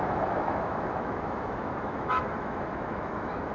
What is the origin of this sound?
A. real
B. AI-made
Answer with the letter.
B